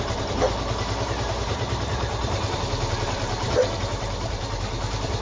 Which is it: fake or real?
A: fake